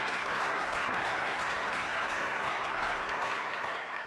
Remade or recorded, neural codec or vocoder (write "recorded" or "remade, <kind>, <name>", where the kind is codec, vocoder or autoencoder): remade, codec, SNAC